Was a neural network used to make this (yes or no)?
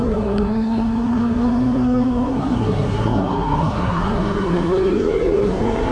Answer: yes